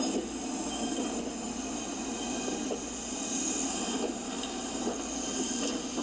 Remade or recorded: recorded